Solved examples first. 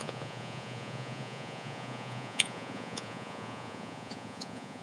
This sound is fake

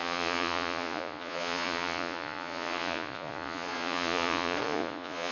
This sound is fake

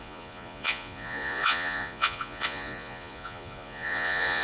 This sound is fake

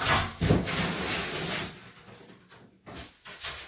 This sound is real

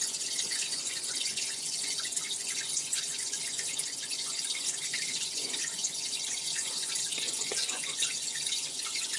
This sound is fake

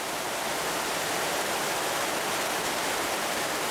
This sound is real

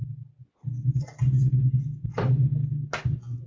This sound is real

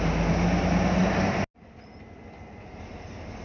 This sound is real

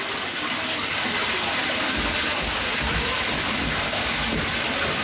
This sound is real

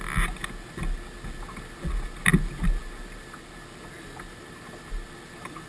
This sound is real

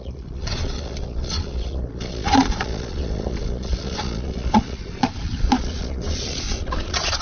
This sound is fake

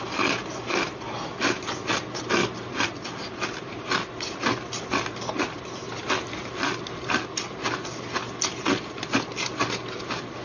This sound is real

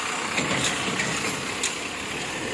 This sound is real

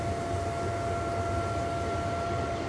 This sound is real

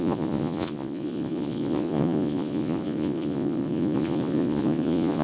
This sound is fake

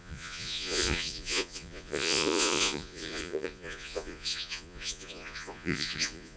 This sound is fake